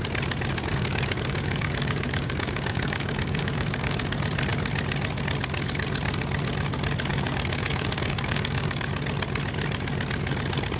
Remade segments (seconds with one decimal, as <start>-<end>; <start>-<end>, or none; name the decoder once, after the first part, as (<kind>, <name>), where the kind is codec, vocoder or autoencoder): 0.7-4.0 (codec, DAC); 7.1-8.9